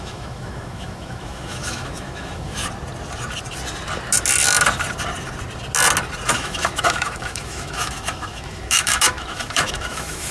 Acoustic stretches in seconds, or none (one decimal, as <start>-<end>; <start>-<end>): 2.6-6.3